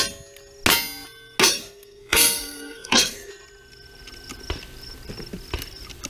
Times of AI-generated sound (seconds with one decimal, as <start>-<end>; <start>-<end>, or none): 1.4-3.3